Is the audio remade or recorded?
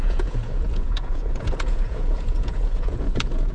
remade